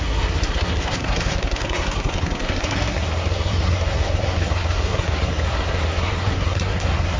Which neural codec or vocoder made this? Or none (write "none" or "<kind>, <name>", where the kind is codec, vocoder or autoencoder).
codec, SNAC